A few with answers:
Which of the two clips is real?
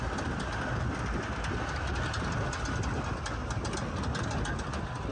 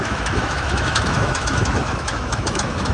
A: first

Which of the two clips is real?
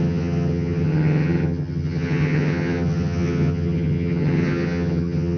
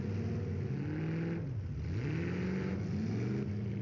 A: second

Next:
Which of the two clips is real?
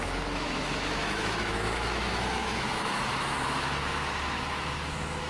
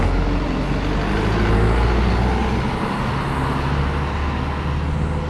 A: second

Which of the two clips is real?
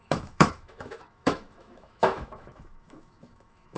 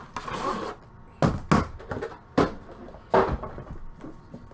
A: second